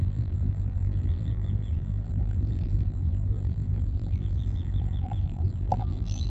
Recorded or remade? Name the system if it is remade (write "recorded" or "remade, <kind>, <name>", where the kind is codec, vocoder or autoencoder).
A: remade, vocoder, BigVGAN v2